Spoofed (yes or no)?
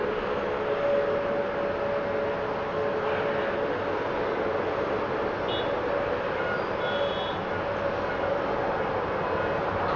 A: no